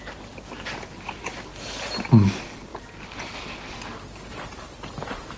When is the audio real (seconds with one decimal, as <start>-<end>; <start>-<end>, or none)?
0.0-5.4